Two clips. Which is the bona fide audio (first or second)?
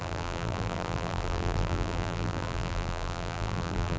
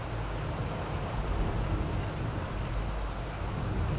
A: second